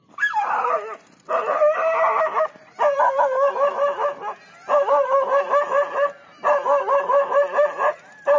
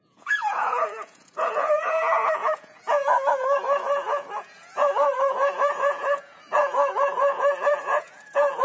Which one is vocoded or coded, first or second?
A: second